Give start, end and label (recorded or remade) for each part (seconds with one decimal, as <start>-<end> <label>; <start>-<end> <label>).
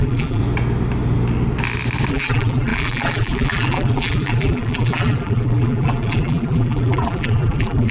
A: 0.0-0.4 remade; 0.4-2.1 recorded; 2.1-7.9 remade